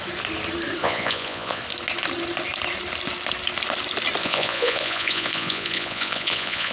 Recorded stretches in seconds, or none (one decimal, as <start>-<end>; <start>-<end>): 0.0-0.8; 1.6-4.2